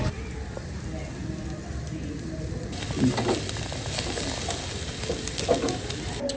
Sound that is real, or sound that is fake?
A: real